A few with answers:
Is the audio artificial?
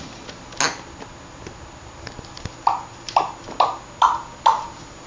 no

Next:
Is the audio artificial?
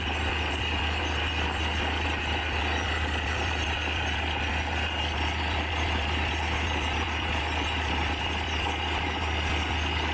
no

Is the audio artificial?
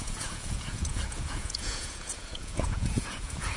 yes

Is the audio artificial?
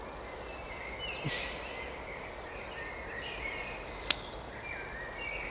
no